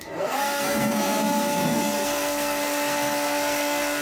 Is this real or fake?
fake